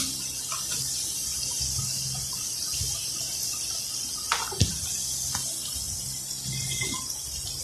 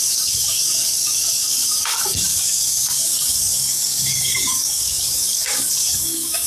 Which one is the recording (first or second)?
first